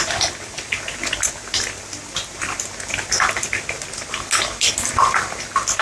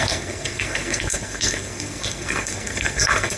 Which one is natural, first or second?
first